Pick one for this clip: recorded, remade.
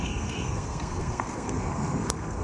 remade